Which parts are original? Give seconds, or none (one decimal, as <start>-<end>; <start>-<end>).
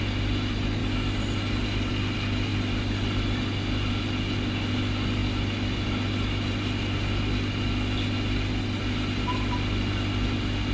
0.0-10.7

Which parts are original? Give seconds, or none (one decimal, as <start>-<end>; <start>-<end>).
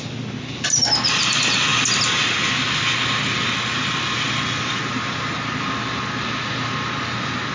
0.0-7.5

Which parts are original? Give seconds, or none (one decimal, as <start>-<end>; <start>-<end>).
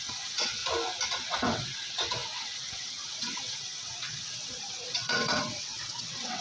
0.6-1.1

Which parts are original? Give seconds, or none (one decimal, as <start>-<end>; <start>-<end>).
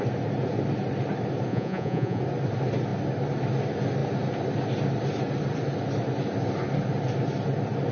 0.0-1.5; 2.2-7.9